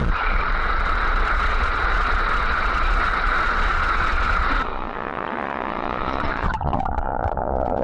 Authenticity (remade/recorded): remade